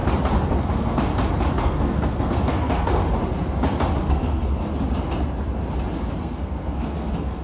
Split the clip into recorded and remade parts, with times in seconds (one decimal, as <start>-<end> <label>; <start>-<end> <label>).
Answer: 0.0-0.6 recorded; 0.6-1.1 remade; 1.1-1.6 recorded; 1.6-3.0 remade; 3.0-4.0 recorded; 4.0-4.6 remade; 4.6-6.2 recorded; 6.2-7.4 remade